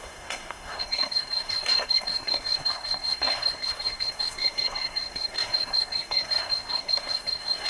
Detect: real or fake fake